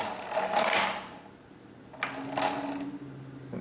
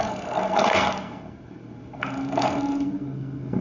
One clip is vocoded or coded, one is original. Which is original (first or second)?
first